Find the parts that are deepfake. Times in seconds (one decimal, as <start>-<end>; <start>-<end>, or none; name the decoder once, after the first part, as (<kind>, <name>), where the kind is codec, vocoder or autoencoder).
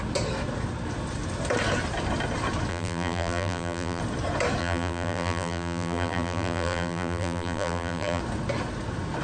2.7-4.0 (vocoder, BigVGAN v2); 4.6-8.2